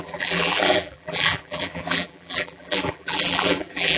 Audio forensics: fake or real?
fake